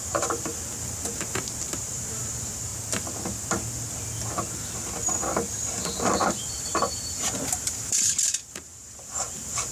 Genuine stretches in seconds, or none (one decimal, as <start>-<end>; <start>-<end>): 0.5-1.6; 2.7-6.3